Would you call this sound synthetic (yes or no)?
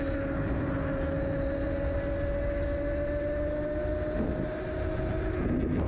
no